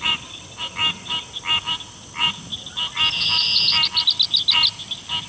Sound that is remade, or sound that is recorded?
recorded